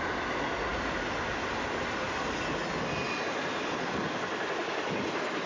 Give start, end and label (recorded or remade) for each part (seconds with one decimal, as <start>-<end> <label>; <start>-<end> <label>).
0.0-5.5 recorded